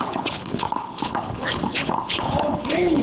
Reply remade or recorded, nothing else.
remade